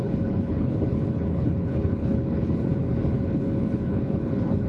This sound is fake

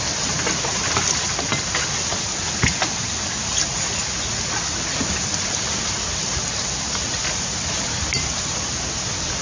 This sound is real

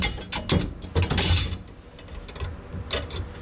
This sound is real